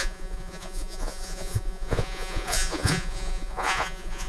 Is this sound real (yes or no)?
no